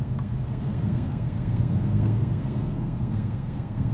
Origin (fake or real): fake